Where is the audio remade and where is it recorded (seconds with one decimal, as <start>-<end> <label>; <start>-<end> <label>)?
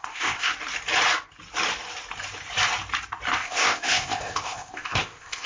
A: 0.0-0.5 remade; 0.5-3.4 recorded; 3.4-5.5 remade